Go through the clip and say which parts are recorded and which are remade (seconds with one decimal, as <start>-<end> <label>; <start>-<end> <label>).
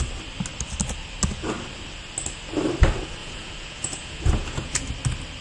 0.0-3.2 recorded; 3.2-4.9 remade; 4.9-5.4 recorded